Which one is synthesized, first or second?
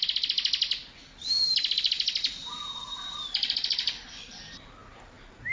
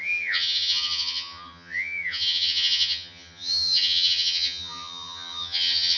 second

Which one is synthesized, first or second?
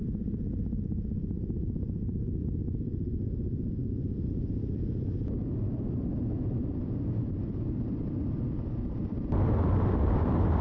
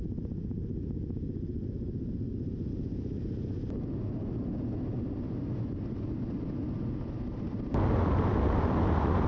first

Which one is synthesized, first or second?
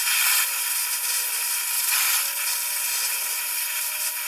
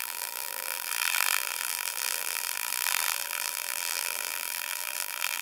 second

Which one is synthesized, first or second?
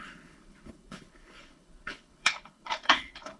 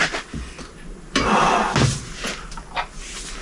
first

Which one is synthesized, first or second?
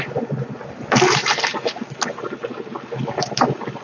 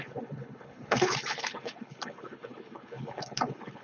second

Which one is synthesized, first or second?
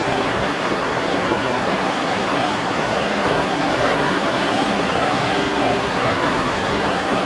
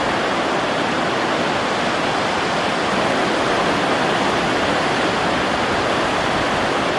first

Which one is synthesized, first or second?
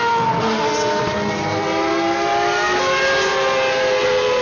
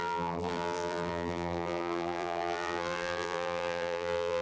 second